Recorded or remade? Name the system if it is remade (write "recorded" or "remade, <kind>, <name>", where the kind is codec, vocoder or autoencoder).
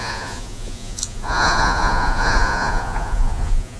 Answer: remade, vocoder, Vocos